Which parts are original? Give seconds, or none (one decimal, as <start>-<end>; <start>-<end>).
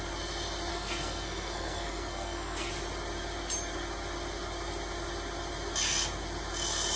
0.0-0.7; 2.7-7.0